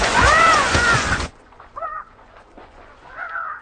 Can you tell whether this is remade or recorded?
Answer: remade